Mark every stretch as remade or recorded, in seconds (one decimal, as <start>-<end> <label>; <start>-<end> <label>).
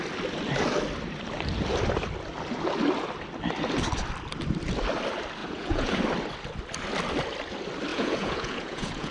0.0-5.4 recorded; 5.4-6.0 remade; 6.0-7.9 recorded; 7.9-9.1 remade